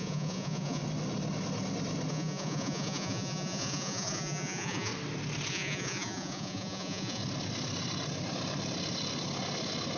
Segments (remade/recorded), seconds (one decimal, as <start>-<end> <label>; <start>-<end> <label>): 0.0-0.8 remade; 0.8-2.1 recorded; 2.1-4.9 remade; 4.9-5.5 recorded; 5.5-7.2 remade; 7.2-10.0 recorded